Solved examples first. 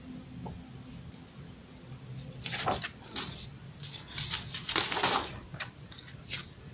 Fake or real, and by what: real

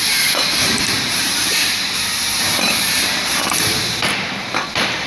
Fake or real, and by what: fake, vocoder, BigVGAN v2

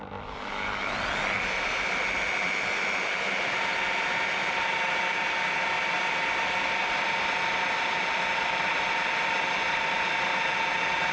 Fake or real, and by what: real